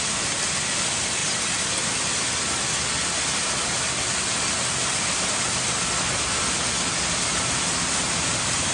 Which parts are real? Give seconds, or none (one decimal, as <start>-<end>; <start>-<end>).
0.0-8.7